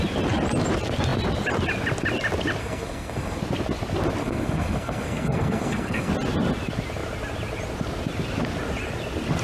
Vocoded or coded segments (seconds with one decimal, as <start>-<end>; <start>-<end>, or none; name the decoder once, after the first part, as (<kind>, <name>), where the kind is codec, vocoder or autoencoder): 2.6-3.4 (codec, SNAC); 4.2-6.1